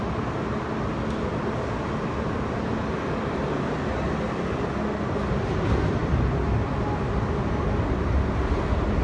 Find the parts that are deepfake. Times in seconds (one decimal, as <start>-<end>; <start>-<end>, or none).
none